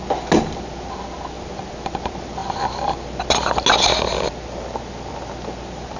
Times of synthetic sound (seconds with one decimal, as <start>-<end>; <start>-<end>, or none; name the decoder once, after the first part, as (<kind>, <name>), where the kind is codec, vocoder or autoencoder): none